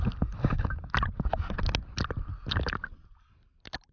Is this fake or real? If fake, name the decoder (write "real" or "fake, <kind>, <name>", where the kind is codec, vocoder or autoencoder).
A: real